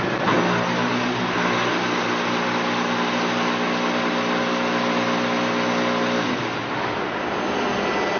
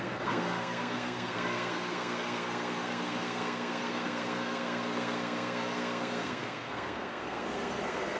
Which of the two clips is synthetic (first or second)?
second